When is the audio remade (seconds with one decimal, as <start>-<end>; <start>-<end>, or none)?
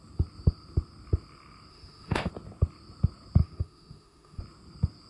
1.7-2.3; 3.4-4.4